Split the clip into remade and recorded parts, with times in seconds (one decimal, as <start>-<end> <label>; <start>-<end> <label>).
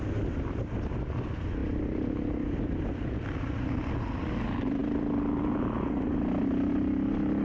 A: 0.0-7.4 recorded